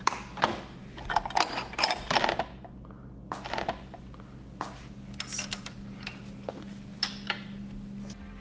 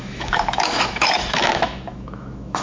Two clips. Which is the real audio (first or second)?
first